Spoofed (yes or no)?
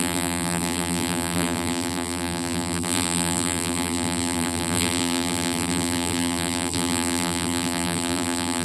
yes